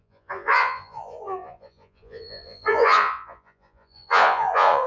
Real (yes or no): no